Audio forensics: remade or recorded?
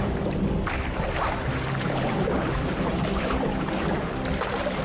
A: remade